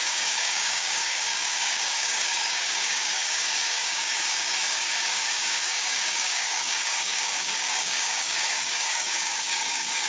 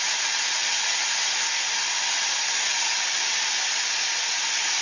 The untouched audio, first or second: second